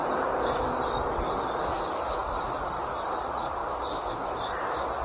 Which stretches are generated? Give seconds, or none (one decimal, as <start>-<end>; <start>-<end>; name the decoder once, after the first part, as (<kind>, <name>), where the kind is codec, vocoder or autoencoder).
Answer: 0.0-1.8 (vocoder, BigVGAN v2); 3.6-4.6